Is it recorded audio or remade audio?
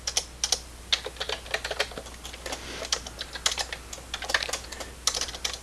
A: recorded